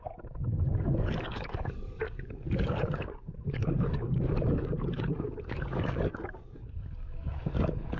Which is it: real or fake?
fake